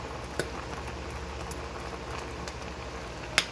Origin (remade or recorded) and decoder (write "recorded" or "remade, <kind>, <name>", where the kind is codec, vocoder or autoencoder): recorded